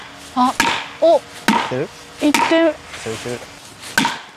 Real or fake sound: real